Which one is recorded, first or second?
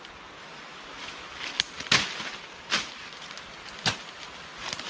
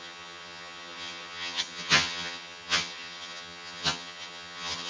first